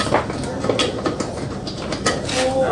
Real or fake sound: real